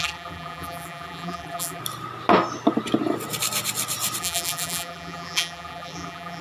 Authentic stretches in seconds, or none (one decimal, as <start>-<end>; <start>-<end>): 1.8-4.2